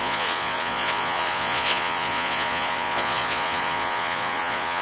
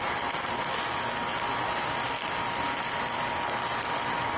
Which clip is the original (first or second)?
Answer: second